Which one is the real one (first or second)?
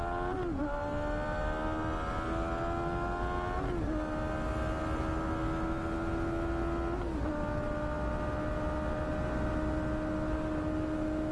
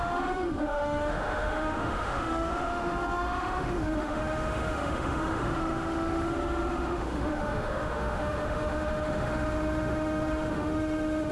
first